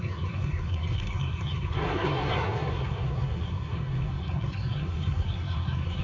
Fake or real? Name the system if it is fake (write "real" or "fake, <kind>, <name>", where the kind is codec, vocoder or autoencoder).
fake, codec, SNAC